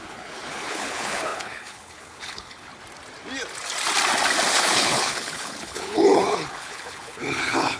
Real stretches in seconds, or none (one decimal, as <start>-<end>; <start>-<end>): 2.7-4.5